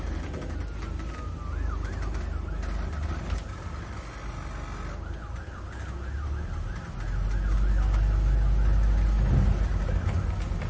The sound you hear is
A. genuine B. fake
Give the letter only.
A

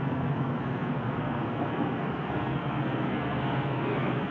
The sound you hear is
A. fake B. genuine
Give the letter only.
A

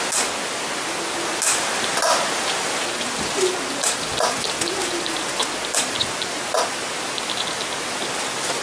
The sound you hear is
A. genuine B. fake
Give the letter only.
A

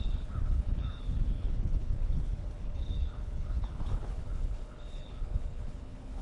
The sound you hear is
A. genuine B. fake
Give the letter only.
B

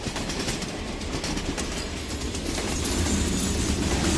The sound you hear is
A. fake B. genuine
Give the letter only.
B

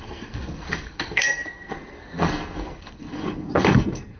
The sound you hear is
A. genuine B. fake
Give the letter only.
B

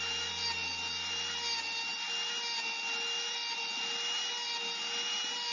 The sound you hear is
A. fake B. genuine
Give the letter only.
B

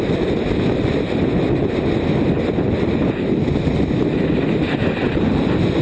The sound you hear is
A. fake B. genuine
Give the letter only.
B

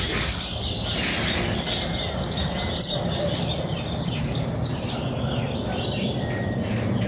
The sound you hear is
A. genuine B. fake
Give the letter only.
A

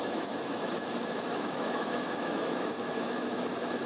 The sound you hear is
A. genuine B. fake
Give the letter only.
B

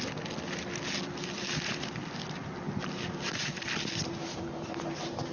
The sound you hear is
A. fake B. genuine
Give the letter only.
B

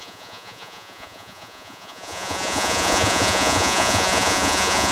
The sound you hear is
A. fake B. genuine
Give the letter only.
A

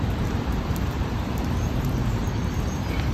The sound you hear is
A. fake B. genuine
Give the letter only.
A